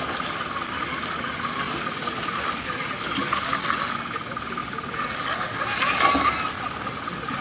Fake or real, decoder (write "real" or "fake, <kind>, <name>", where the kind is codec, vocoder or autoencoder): real